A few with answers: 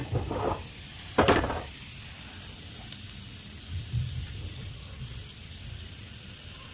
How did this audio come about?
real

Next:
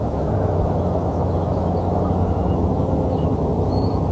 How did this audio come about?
fake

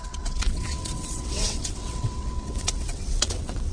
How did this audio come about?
fake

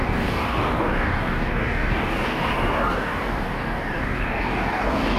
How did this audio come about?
fake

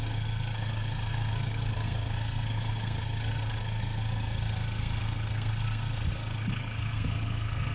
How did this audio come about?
fake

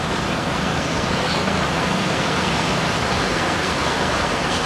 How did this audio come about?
fake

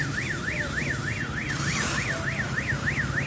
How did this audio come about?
real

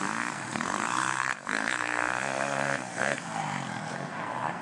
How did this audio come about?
fake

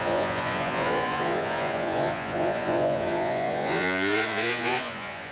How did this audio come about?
fake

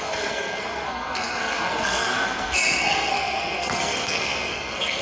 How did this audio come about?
fake